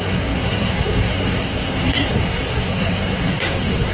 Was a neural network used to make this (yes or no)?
yes